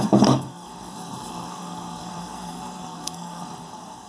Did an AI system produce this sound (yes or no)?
yes